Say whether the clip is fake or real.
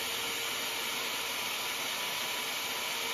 real